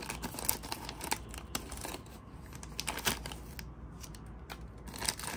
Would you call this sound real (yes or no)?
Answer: yes